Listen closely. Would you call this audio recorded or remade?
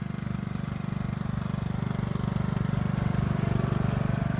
recorded